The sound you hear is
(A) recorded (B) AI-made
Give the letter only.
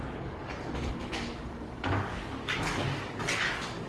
B